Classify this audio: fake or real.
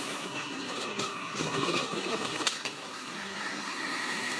fake